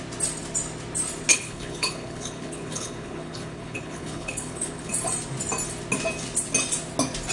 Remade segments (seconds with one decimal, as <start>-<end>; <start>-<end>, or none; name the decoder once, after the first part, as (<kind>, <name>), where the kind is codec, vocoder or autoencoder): 1.3-4.9 (codec, HILCodec)